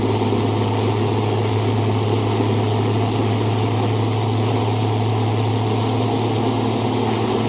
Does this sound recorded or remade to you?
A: recorded